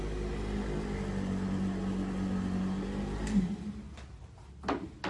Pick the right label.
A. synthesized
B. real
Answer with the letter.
B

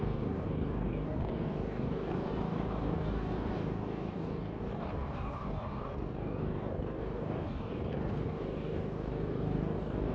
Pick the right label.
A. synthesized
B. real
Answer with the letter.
A